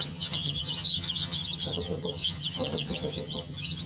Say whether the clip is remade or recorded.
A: remade